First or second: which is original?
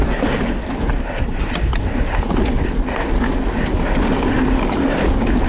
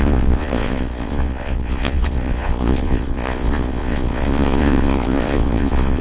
first